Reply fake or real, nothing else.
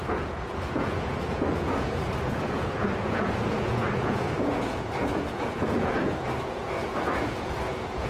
fake